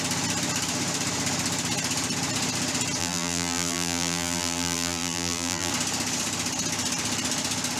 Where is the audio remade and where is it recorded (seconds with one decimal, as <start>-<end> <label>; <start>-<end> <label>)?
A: 0.0-3.0 recorded; 3.0-5.7 remade; 5.7-7.8 recorded